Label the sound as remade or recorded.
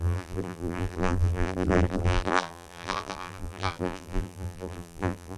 remade